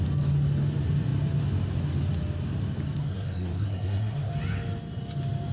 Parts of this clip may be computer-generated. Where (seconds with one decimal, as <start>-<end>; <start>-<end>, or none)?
3.0-4.3